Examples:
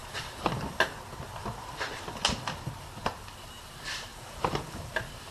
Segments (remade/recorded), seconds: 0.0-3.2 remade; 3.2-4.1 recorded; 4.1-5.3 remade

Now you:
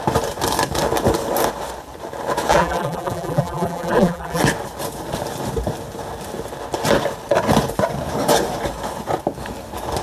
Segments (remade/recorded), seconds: 0.0-2.5 recorded; 2.5-4.4 remade; 4.4-10.0 recorded

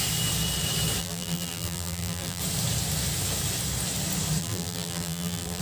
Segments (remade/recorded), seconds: 0.0-1.0 recorded; 1.0-2.4 remade; 2.4-4.4 recorded; 4.4-5.6 remade

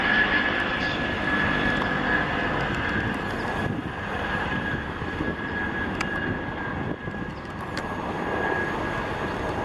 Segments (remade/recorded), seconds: 0.0-3.8 recorded; 3.8-5.6 remade; 5.6-9.6 recorded

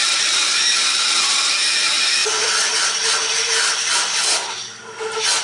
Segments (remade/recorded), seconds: 0.0-1.4 remade; 1.4-2.2 recorded; 2.2-4.5 remade; 4.5-5.4 recorded

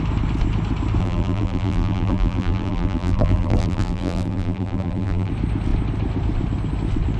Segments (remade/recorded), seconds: 0.0-1.0 recorded; 1.0-5.3 remade; 5.3-7.2 recorded

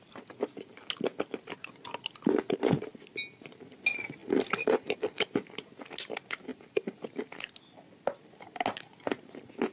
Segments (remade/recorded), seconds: 0.0-4.2 recorded; 4.2-5.2 remade; 5.2-6.5 recorded; 6.5-7.1 remade; 7.1-9.7 recorded

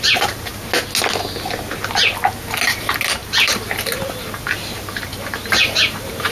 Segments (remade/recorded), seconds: 0.0-0.5 remade; 0.5-2.6 recorded; 2.6-6.3 remade